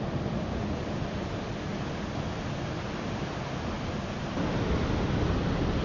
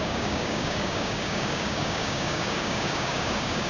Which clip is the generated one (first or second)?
second